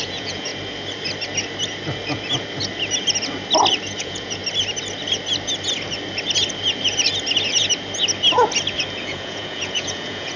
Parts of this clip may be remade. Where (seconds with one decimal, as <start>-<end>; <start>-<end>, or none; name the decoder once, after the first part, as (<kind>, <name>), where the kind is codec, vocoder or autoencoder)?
0.0-0.5 (vocoder, Vocos); 4.0-4.4; 9.0-10.4